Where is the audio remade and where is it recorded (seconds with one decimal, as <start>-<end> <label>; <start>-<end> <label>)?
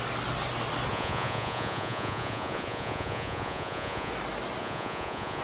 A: 0.0-0.9 recorded; 0.9-4.1 remade; 4.1-4.6 recorded; 4.6-5.4 remade